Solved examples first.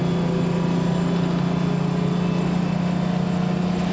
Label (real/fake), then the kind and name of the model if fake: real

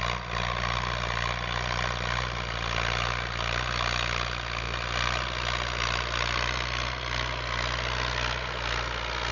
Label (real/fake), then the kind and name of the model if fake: real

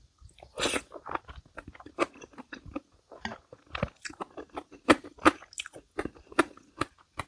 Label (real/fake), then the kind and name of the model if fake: real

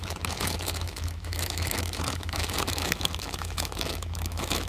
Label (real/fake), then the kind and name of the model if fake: fake, autoencoder, DAC-VAE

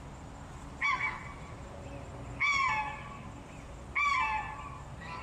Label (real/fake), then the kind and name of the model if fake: real